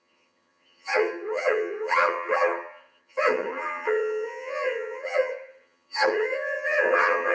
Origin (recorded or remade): remade